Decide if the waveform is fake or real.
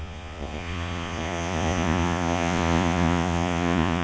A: fake